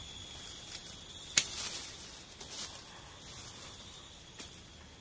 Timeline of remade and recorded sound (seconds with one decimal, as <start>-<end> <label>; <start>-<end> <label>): 0.0-5.0 recorded